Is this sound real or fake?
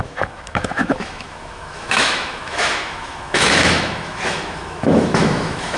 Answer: fake